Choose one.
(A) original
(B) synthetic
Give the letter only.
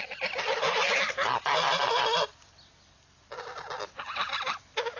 A